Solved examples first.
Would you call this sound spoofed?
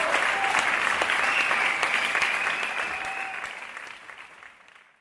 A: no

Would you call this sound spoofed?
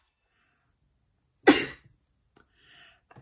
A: no